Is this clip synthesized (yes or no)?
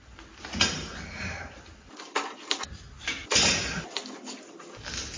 no